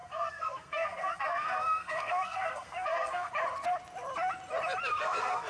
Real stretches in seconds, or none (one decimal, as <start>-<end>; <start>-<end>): 3.3-4.9